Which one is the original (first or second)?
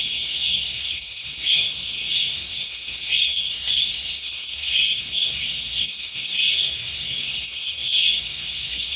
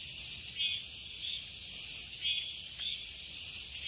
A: second